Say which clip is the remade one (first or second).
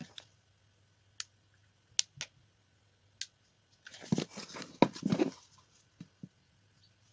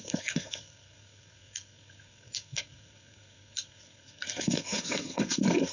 second